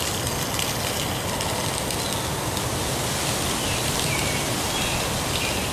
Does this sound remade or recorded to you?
recorded